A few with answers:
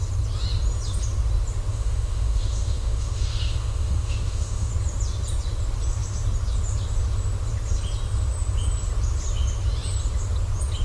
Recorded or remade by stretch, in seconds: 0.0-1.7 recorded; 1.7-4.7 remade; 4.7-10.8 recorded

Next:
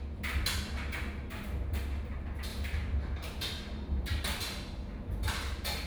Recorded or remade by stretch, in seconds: 0.0-2.5 recorded; 2.5-5.1 remade; 5.1-5.9 recorded